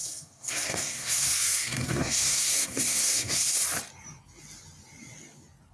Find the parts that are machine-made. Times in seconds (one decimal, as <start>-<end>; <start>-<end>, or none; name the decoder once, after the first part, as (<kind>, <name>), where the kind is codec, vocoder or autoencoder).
0.0-3.6 (codec, SNAC)